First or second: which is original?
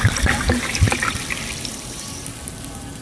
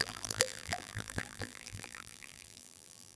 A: first